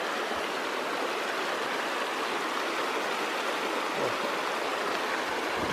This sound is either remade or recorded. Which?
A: recorded